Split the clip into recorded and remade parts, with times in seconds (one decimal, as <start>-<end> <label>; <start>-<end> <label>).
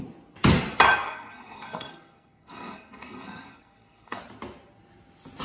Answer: 0.0-1.0 recorded; 1.0-4.2 remade; 4.2-5.4 recorded